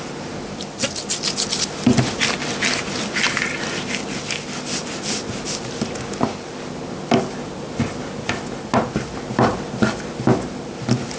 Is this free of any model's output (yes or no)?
yes